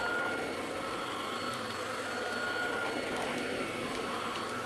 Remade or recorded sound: recorded